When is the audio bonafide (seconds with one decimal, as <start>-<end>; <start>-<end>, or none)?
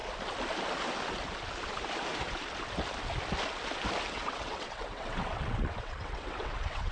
0.0-4.1